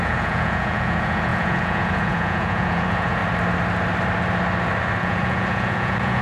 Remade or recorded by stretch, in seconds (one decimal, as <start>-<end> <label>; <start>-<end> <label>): 0.0-3.2 remade; 3.2-5.0 recorded; 5.0-6.2 remade